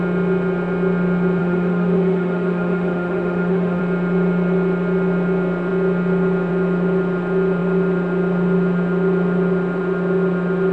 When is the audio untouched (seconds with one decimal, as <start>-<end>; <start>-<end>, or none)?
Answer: 0.0-1.4; 3.8-10.7